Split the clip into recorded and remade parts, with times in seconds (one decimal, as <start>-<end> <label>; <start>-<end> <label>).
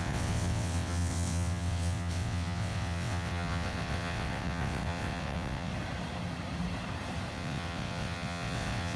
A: 0.0-5.7 remade; 5.7-7.3 recorded; 7.3-9.0 remade